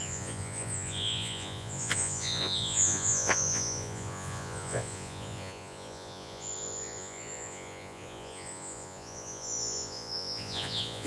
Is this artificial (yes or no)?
yes